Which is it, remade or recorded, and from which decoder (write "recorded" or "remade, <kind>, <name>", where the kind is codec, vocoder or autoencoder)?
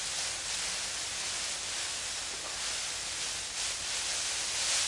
recorded